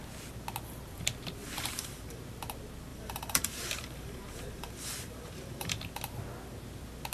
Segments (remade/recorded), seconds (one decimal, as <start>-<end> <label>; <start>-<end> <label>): 0.0-1.4 recorded; 1.4-2.2 remade; 2.2-2.9 recorded; 2.9-5.8 remade; 5.8-7.1 recorded